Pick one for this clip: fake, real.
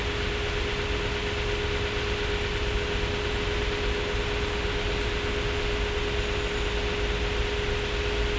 real